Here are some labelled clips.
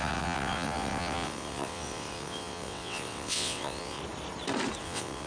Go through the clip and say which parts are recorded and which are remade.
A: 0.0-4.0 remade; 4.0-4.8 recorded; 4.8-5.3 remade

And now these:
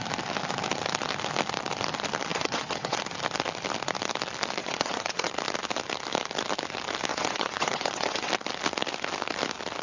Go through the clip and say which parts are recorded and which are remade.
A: 0.0-2.3 recorded; 2.3-3.0 remade; 3.0-4.6 recorded; 4.6-5.3 remade; 5.3-7.1 recorded; 7.1-8.3 remade; 8.3-9.8 recorded

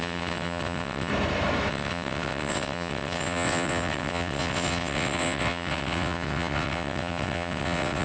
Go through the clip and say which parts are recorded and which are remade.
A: 0.0-1.1 remade; 1.1-1.7 recorded; 1.7-8.0 remade